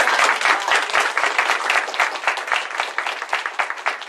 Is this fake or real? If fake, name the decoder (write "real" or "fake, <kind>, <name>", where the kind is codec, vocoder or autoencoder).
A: real